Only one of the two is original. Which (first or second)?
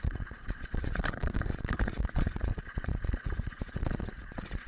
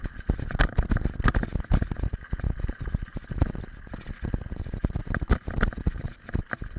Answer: second